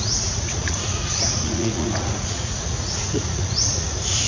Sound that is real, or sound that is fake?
fake